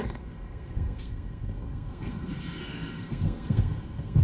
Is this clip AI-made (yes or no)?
yes